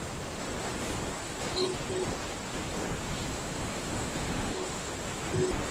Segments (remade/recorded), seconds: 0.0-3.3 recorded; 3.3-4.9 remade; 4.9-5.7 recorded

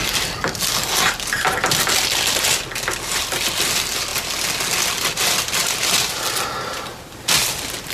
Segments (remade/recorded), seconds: 0.0-7.9 recorded

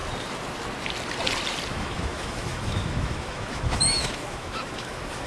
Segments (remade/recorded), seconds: 0.0-1.7 recorded; 1.7-5.3 remade

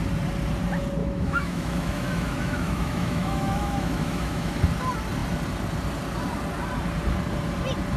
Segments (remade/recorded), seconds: 0.0-1.0 recorded; 1.0-4.6 remade; 4.6-8.0 recorded

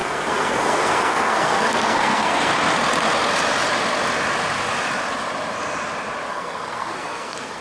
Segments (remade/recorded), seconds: 0.0-2.5 remade; 2.5-6.3 recorded; 6.3-7.6 remade